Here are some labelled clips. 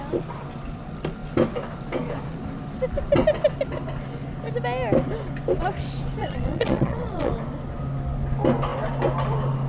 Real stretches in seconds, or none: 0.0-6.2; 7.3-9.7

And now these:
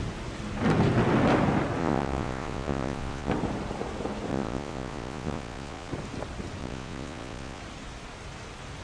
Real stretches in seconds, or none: 0.0-1.8; 3.3-4.3; 5.9-6.6; 7.6-8.8